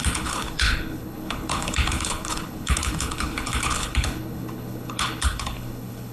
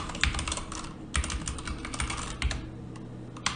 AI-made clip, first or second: first